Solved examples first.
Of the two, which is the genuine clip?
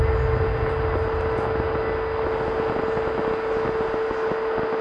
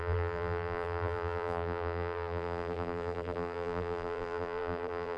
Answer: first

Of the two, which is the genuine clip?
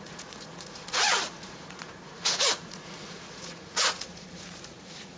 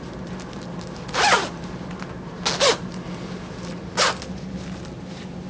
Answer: second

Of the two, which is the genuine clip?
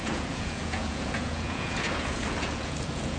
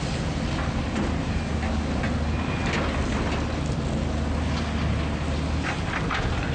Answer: second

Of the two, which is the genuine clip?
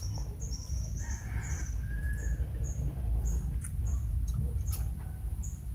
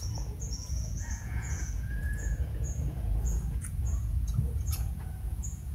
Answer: first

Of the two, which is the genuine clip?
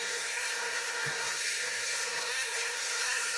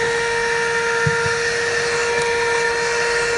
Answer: second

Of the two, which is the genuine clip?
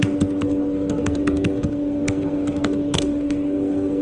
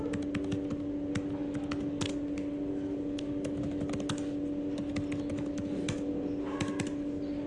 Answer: second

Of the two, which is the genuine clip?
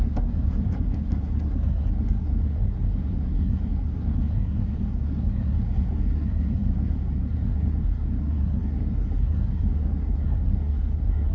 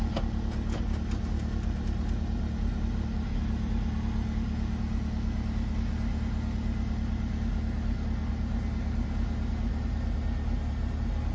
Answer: second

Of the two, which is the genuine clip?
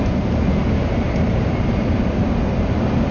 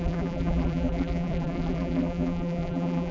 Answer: first